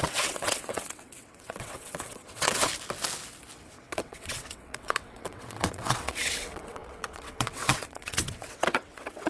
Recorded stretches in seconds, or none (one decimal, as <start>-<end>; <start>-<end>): 2.7-3.8